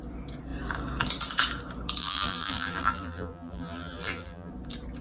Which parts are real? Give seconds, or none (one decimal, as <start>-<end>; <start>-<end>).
0.0-2.0; 4.5-5.0